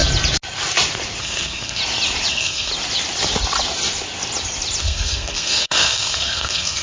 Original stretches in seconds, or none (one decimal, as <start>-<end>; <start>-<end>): 0.0-1.2; 1.8-2.3; 2.7-4.8